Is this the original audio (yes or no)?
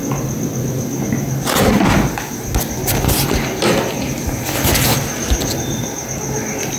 yes